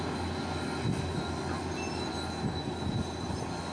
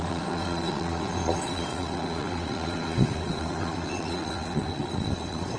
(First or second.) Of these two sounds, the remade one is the second